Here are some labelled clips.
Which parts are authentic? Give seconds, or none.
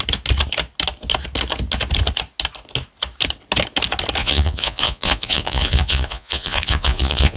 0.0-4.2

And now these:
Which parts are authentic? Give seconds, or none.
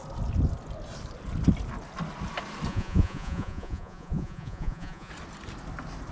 0.0-2.7; 5.1-6.1